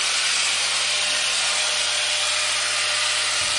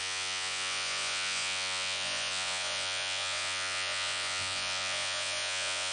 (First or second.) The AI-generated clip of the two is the second